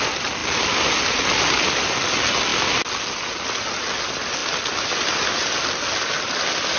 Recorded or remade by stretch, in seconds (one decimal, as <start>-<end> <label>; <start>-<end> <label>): 0.0-6.8 recorded